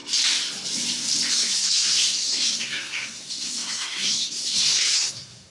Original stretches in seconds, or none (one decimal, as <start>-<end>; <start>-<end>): 0.0-1.3